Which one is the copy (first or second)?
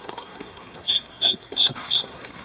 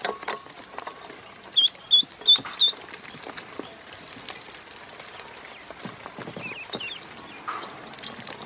first